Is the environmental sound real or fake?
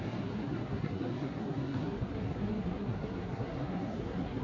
fake